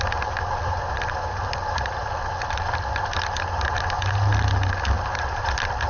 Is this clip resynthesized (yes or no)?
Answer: no